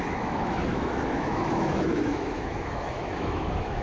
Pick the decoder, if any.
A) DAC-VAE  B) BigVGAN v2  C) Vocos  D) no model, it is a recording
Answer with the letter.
A